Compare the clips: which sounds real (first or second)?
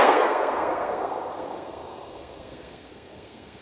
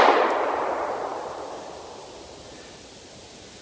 second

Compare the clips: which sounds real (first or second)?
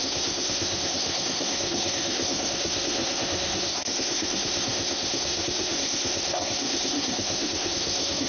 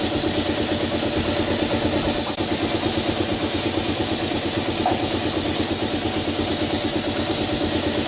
second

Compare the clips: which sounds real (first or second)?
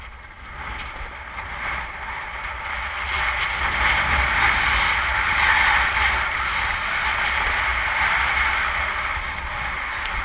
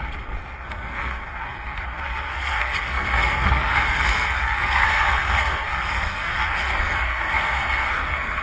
first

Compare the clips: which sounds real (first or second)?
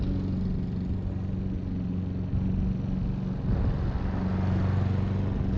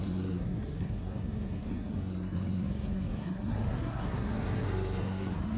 first